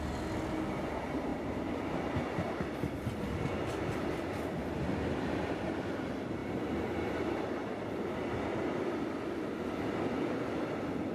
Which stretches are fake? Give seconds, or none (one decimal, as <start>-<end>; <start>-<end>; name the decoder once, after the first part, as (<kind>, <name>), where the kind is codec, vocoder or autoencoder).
1.3-1.9 (vocoder, BigVGAN v2); 4.6-5.9; 6.4-7.4